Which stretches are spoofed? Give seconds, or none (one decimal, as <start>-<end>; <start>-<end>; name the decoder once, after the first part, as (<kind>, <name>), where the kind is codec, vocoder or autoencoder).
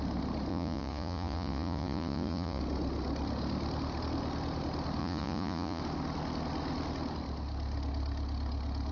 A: 0.5-2.6 (vocoder, Vocos); 5.0-5.8